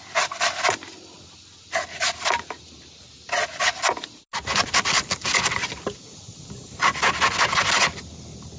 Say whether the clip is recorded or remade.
recorded